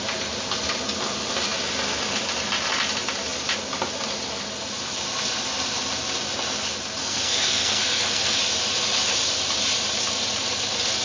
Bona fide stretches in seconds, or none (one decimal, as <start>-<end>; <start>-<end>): 0.0-7.0; 8.4-11.0